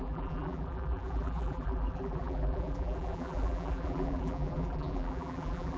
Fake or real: fake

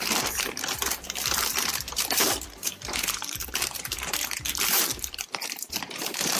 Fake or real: fake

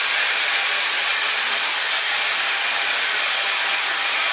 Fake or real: real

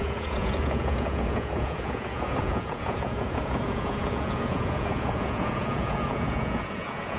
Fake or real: fake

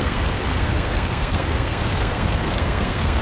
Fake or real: fake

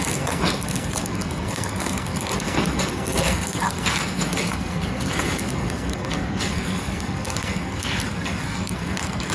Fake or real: fake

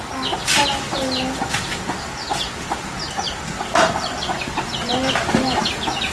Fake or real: real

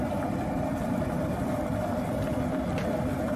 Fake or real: real